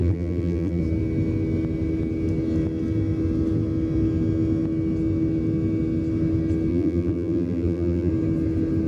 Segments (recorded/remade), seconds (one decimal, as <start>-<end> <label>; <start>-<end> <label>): 0.0-0.8 remade; 0.8-6.7 recorded; 6.7-8.1 remade; 8.1-8.9 recorded